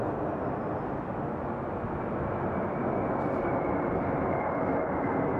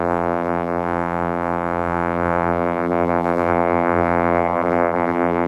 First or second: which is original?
first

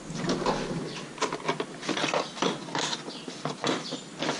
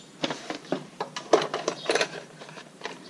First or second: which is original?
first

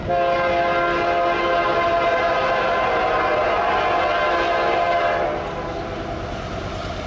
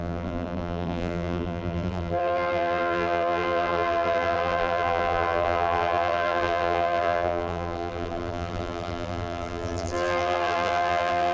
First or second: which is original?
first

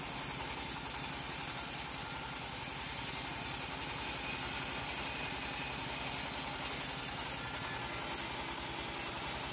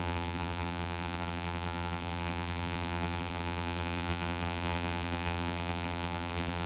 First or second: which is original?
first